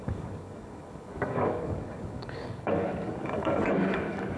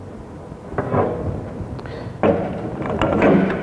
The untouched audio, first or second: second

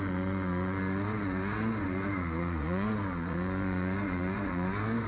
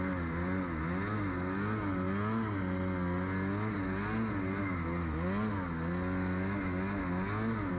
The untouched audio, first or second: second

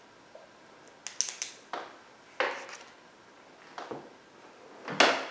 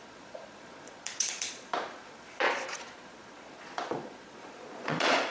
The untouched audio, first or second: first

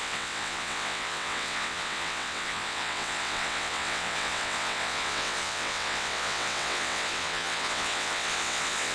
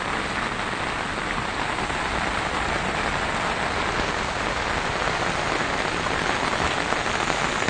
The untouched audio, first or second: second